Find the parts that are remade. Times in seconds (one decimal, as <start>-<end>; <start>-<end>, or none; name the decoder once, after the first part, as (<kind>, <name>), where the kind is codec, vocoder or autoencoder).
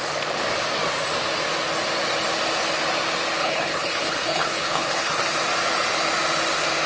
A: 3.4-5.2 (codec, HILCodec)